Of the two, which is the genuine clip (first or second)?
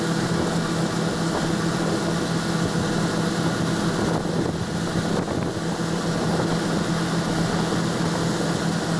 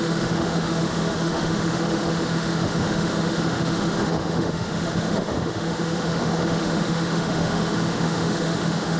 first